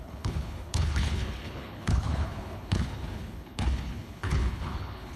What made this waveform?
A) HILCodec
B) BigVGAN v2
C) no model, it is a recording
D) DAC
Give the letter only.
A